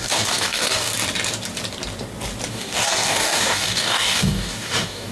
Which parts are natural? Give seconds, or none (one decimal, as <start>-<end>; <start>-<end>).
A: 0.9-2.5

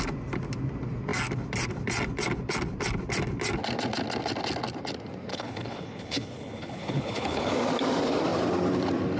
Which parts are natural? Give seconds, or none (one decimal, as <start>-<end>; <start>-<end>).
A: 0.0-5.3; 7.5-9.2